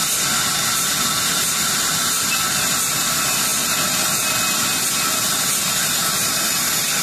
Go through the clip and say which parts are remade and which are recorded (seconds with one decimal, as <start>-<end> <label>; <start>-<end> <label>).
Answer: 0.0-7.0 recorded